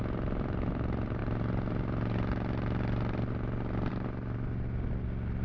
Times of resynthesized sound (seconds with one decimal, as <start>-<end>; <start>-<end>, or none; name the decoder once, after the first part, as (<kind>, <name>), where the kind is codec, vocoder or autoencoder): none